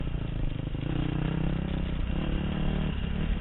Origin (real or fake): real